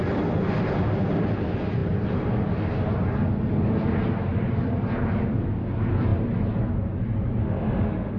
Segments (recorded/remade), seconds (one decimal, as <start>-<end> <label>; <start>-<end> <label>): 0.0-7.4 recorded; 7.4-8.2 remade